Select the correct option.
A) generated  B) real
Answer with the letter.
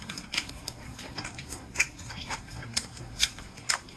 A